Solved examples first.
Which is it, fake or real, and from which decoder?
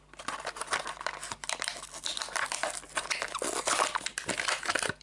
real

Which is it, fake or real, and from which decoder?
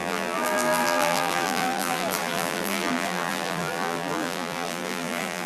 fake, vocoder, BigVGAN v2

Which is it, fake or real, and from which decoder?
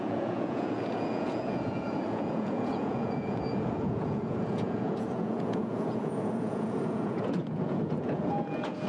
fake, vocoder, Vocos